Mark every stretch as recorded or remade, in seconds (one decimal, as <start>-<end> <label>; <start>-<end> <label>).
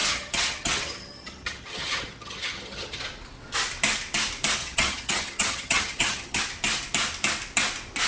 0.0-3.0 remade; 3.0-4.6 recorded; 4.6-6.4 remade; 6.4-8.1 recorded